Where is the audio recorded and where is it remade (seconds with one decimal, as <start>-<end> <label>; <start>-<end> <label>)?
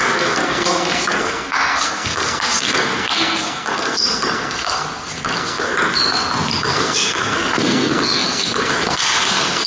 0.0-5.7 remade; 5.7-6.6 recorded; 6.6-9.7 remade